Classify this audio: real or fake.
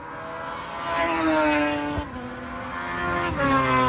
real